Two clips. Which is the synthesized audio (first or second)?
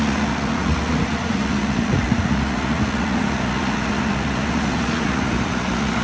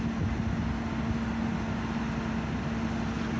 first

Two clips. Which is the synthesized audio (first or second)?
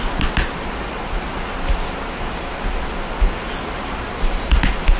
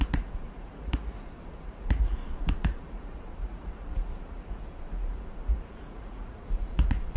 second